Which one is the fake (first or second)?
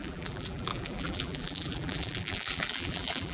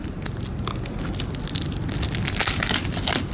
first